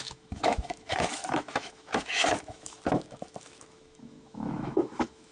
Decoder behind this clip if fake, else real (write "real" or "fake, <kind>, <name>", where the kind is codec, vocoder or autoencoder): fake, autoencoder, DAC-VAE